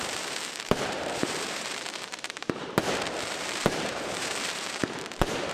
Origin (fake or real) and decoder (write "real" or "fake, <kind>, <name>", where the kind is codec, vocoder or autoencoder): fake, vocoder, BigVGAN v2